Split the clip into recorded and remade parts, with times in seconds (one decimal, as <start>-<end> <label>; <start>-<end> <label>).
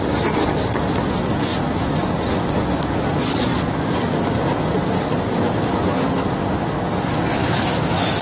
0.0-7.4 recorded; 7.4-8.2 remade